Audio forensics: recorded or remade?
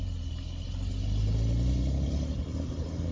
recorded